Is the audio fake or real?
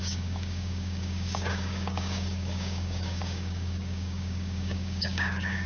fake